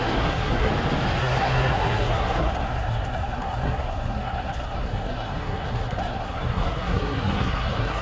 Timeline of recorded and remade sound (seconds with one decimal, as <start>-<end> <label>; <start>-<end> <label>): 0.0-0.7 remade; 0.7-1.2 recorded; 1.2-8.0 remade